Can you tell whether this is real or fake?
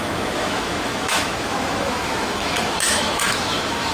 fake